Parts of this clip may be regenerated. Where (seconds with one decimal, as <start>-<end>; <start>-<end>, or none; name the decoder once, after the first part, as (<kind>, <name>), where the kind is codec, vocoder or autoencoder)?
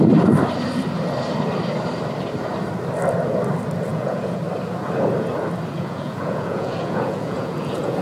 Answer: 3.9-4.4 (vocoder, Vocos); 5.7-8.0